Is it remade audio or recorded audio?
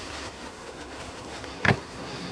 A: remade